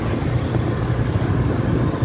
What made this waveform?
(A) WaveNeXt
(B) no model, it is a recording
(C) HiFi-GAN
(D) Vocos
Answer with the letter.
B